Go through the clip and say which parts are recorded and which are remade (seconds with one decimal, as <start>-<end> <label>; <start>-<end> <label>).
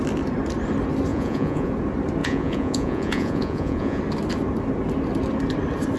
0.0-1.1 recorded; 1.1-1.7 remade; 1.7-2.2 recorded; 2.2-4.0 remade; 4.0-6.0 recorded